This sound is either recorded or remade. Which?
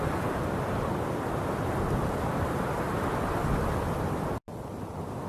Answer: recorded